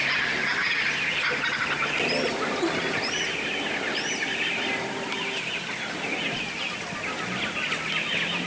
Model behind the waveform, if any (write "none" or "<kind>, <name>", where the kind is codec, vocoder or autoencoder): none